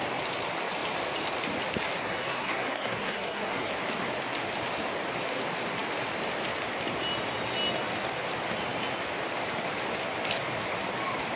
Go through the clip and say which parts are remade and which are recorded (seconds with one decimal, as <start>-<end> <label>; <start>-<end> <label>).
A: 0.0-2.0 recorded; 2.0-3.7 remade; 3.7-11.4 recorded